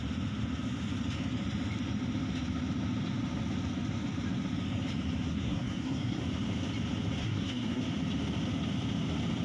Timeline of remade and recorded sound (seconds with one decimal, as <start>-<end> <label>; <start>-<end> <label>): 0.0-5.3 recorded; 5.3-6.2 remade; 6.2-7.2 recorded; 7.2-7.8 remade; 7.8-9.4 recorded